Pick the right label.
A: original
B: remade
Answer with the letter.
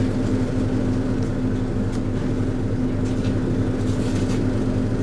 A